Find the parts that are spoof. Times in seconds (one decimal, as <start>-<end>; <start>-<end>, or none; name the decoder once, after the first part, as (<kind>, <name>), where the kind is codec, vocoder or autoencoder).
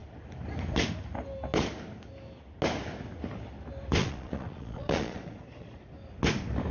4.0-5.9 (vocoder, Vocos)